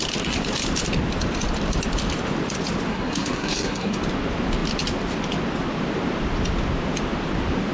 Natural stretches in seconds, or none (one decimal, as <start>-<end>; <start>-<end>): 0.0-2.9; 4.0-7.7